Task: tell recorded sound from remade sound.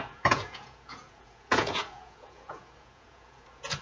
remade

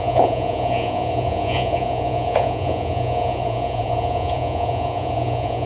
remade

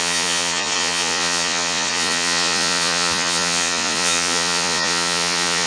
remade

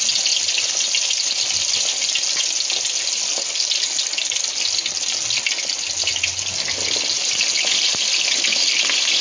recorded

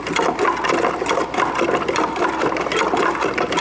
recorded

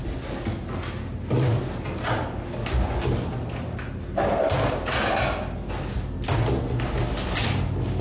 recorded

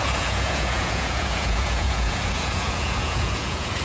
remade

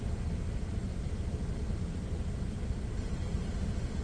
recorded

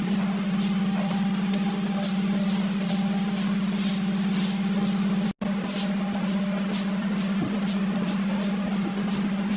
recorded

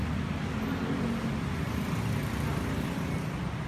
recorded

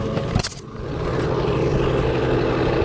recorded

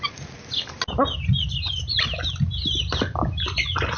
recorded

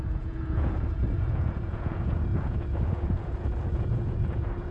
remade